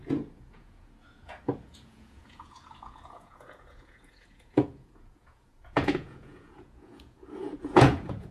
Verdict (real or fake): fake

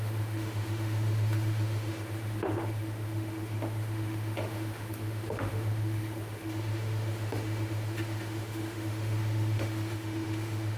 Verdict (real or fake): fake